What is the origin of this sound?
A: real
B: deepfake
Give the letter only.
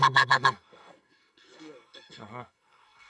B